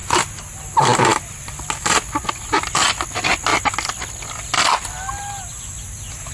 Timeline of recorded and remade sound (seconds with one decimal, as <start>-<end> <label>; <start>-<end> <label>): 0.0-6.3 recorded